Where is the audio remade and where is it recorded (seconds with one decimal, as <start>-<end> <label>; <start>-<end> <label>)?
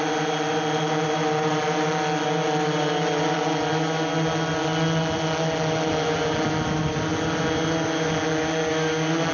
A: 0.0-9.3 recorded